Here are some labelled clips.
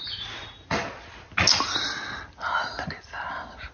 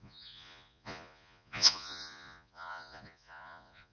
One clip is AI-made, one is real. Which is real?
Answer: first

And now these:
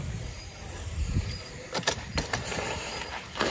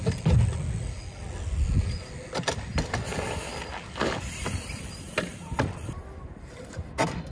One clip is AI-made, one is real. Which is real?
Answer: second